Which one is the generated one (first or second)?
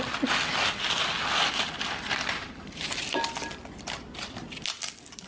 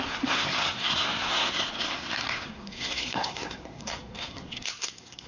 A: second